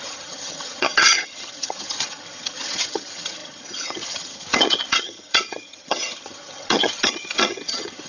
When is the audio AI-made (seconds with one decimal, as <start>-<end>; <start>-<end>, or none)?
0.0-8.1